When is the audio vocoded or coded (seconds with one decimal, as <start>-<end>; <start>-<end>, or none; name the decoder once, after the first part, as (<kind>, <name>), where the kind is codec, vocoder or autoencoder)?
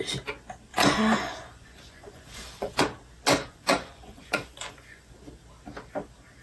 0.7-2.8 (vocoder, Vocos); 3.4-5.1